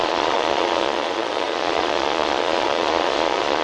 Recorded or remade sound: remade